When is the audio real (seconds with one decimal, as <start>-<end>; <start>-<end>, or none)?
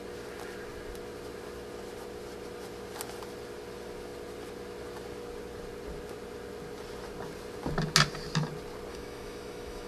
0.0-8.9